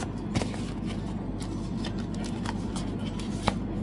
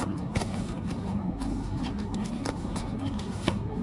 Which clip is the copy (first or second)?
second